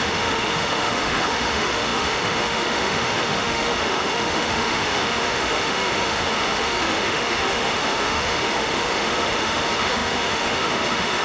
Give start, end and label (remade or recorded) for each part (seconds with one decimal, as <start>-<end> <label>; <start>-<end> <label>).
0.0-11.2 remade

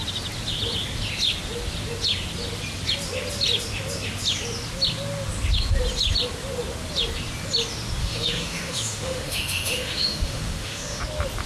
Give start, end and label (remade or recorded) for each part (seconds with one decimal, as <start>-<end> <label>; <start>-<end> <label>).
0.0-8.0 recorded; 8.0-11.0 remade; 11.0-11.5 recorded